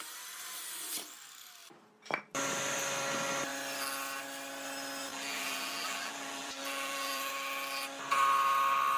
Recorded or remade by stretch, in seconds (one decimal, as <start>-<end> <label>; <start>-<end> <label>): 0.0-5.1 recorded; 5.1-7.3 remade; 7.3-9.0 recorded